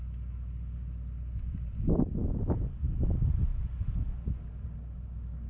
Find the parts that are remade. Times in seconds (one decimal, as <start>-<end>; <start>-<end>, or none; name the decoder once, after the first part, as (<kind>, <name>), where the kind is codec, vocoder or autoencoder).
none